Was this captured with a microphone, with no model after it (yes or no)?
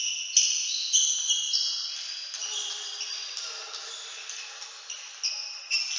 yes